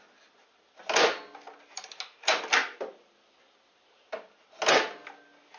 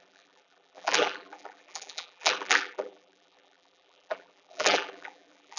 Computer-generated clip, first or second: second